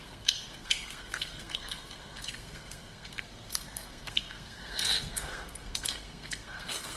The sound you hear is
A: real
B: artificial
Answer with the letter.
B